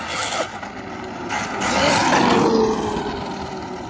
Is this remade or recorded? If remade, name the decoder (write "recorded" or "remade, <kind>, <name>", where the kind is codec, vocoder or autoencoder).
recorded